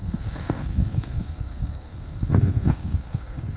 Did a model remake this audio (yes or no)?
yes